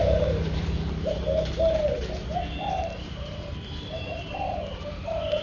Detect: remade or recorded remade